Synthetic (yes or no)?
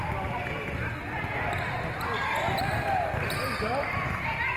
no